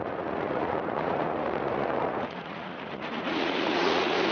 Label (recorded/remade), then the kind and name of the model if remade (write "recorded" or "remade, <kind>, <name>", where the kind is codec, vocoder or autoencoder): remade, vocoder, Vocos